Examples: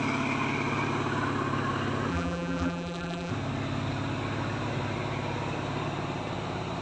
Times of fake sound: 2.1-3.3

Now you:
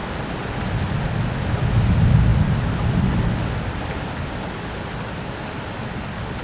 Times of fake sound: none

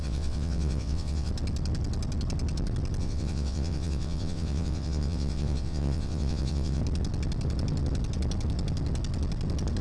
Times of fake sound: 0.0-1.3; 3.0-6.8

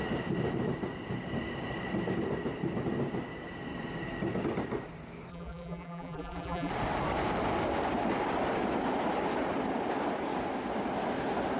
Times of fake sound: 5.3-6.7